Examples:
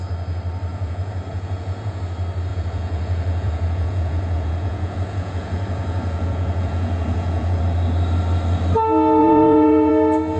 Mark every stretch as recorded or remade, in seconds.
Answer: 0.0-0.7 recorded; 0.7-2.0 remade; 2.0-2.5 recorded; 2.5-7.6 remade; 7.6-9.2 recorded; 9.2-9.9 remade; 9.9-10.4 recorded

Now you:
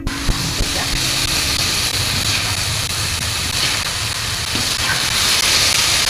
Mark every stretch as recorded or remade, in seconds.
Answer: 0.0-1.9 recorded; 1.9-3.9 remade; 3.9-6.1 recorded

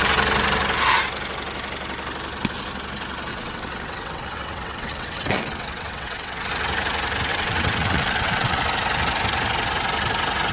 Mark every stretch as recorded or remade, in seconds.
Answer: 0.0-3.3 recorded; 3.3-6.5 remade; 6.5-7.3 recorded; 7.3-8.6 remade; 8.6-10.5 recorded

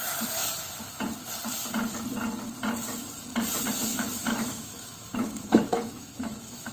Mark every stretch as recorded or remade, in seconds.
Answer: 0.0-3.9 recorded; 3.9-6.7 remade

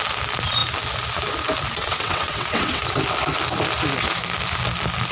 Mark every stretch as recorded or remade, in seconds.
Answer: 0.0-1.8 recorded; 1.8-2.8 remade; 2.8-5.1 recorded